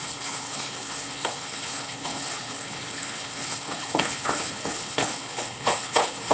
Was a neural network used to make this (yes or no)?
yes